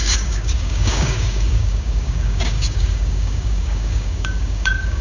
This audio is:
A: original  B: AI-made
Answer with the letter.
B